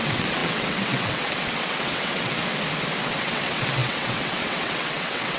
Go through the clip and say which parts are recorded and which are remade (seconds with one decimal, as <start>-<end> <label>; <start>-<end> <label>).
0.0-2.4 remade; 2.4-3.0 recorded; 3.0-5.4 remade

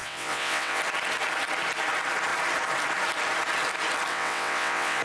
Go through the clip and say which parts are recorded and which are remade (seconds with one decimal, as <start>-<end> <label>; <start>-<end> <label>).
0.0-0.8 remade; 0.8-4.1 recorded; 4.1-5.0 remade

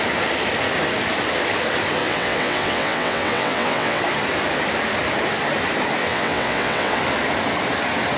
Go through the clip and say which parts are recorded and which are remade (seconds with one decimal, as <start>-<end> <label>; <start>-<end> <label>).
0.0-2.0 recorded; 2.0-4.0 remade; 4.0-6.0 recorded; 6.0-7.0 remade; 7.0-8.2 recorded

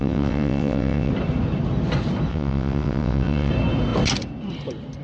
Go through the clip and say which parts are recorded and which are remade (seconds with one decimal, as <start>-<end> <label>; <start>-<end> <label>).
0.0-1.1 remade; 1.1-2.3 recorded; 2.3-3.5 remade; 3.5-5.0 recorded